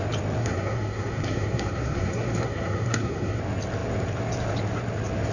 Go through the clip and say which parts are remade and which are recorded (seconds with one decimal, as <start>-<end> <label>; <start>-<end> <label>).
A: 0.0-0.4 recorded; 0.4-3.4 remade; 3.4-5.3 recorded